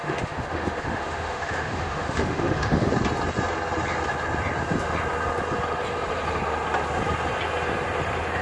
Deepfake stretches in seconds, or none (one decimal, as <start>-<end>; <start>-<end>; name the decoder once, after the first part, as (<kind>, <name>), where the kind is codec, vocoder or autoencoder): 0.0-2.9 (autoencoder, DAC-VAE)